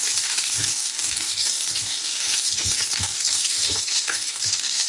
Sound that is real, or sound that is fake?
fake